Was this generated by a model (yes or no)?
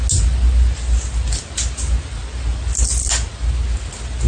no